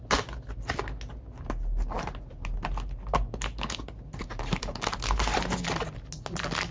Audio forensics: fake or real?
real